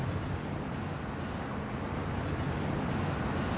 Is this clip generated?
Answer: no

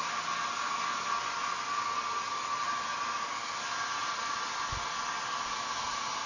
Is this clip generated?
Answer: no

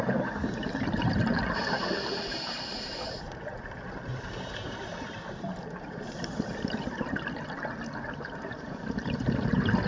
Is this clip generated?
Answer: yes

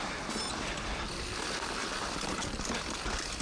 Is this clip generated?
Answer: no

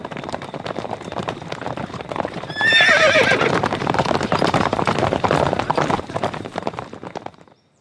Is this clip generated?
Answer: yes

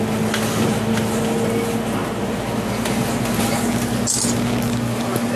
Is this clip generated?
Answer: no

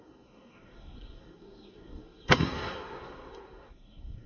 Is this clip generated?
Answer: yes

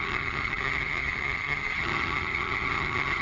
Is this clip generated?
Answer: yes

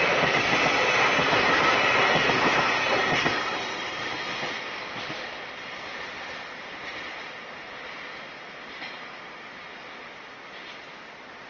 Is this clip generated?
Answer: no